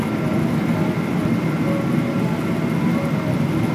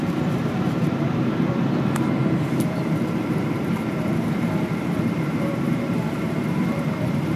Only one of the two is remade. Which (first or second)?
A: second